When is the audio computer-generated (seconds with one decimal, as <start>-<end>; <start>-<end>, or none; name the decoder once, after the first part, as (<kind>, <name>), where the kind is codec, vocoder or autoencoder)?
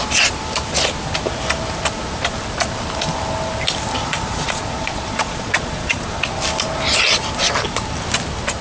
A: 4.0-6.2 (vocoder, Vocos)